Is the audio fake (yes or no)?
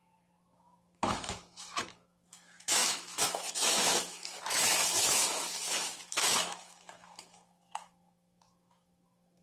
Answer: yes